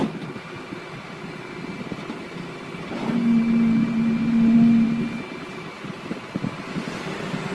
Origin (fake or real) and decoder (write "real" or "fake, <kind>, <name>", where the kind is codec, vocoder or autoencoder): real